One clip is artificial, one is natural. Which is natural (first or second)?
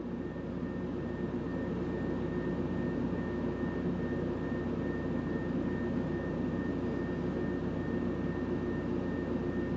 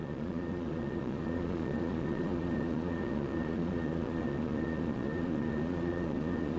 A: first